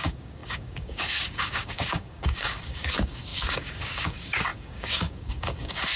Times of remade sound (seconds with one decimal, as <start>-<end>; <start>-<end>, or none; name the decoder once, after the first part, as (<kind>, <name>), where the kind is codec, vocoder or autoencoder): 0.0-6.0 (codec, DAC)